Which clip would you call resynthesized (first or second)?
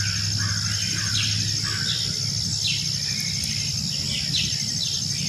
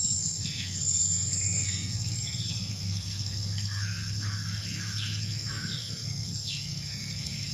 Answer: second